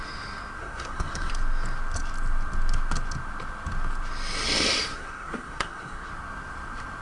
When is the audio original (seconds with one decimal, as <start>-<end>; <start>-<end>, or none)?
0.0-0.6; 1.3-4.9; 6.1-7.0